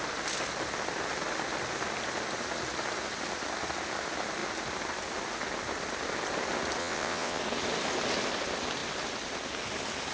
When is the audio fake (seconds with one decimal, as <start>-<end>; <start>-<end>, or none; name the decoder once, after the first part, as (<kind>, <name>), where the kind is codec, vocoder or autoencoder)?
6.8-7.4 (vocoder, WaveNeXt)